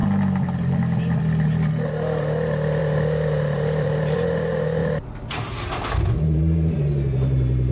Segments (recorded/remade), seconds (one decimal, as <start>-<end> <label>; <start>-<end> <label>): 0.0-2.8 recorded; 2.8-4.8 remade; 4.8-6.1 recorded; 6.1-7.7 remade